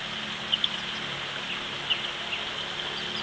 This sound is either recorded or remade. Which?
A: recorded